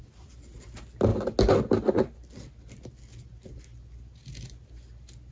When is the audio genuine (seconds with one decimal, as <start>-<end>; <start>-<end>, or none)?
0.0-5.3